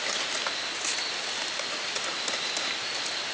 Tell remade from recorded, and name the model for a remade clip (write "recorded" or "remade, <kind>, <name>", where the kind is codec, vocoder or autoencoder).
recorded